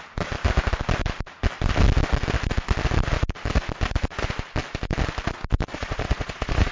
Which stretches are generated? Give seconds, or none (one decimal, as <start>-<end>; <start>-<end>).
5.7-6.7